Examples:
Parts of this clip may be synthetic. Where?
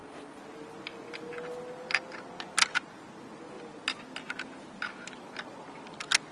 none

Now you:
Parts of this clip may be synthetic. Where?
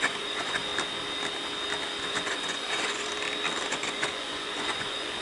0.0-0.7 (vocoder, Vocos); 2.0-3.1; 3.7-5.2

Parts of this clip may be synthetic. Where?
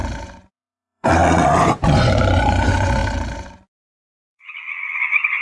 0.5-3.0 (vocoder, Vocos); 3.8-5.4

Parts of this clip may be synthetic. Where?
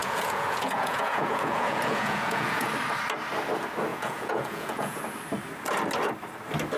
0.0-2.7 (vocoder, Vocos); 3.9-5.0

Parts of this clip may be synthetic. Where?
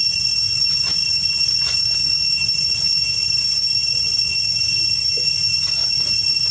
none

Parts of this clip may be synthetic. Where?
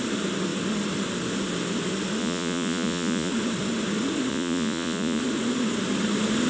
2.2-3.3 (vocoder, Vocos); 4.3-5.2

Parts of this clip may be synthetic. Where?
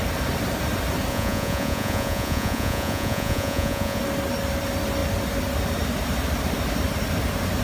1.1-4.0 (vocoder, Vocos)